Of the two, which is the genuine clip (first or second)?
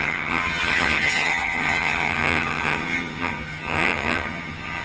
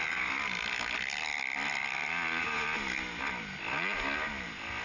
second